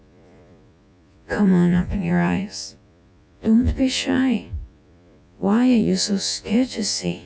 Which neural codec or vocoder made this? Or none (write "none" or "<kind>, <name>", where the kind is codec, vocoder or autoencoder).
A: vocoder, Vocos